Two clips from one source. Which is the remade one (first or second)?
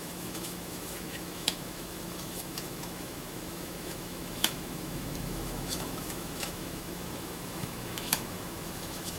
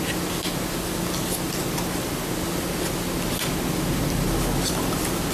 first